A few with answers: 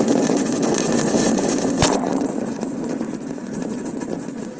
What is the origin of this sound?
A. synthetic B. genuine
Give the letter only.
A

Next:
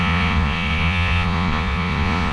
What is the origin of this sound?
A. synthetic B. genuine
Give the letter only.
A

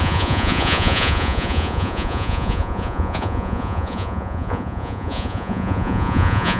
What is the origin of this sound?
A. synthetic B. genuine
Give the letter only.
A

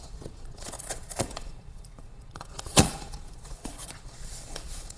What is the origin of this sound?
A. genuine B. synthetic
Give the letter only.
B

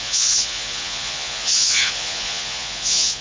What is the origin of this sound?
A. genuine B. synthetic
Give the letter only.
B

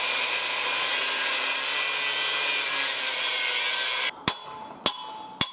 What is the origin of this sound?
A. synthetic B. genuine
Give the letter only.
B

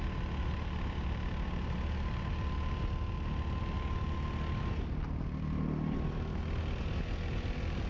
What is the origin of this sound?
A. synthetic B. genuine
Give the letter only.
B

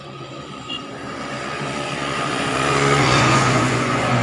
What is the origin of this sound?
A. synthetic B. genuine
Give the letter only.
A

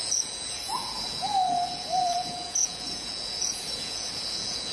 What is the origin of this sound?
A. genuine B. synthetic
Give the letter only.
B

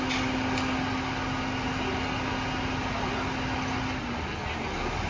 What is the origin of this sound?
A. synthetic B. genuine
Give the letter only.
B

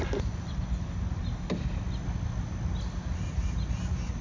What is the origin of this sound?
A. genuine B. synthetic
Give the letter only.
A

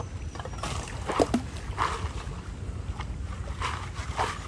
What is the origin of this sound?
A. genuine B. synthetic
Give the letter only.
A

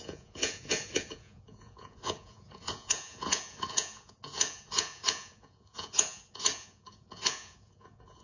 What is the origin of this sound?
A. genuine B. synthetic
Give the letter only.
B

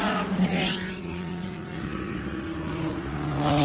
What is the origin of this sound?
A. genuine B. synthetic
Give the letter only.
B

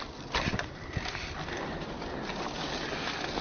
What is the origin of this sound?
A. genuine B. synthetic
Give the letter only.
A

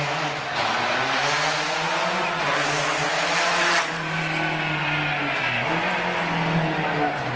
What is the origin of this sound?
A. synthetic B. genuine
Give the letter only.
B